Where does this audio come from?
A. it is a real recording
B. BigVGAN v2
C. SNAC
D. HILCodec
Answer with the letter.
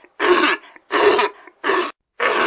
A